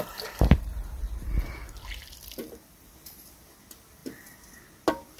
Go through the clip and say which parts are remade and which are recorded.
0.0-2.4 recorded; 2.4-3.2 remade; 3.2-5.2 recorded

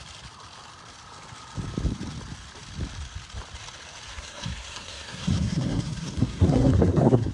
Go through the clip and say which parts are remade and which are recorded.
0.0-4.1 recorded; 4.1-7.3 remade